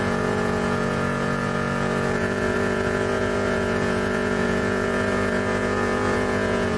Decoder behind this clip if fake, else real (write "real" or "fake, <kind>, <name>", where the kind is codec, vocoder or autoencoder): fake, vocoder, Vocos